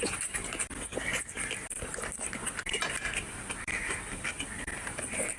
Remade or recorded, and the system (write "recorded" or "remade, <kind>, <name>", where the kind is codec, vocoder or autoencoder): recorded